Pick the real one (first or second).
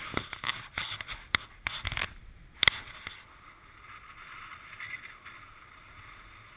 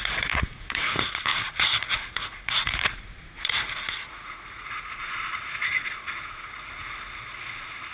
first